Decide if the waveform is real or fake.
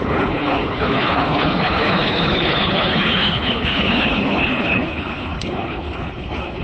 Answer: fake